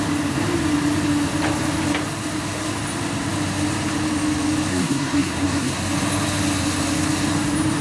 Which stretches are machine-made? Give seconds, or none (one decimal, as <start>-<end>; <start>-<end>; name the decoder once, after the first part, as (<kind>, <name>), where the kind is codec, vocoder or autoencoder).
4.7-5.8 (codec, SNAC)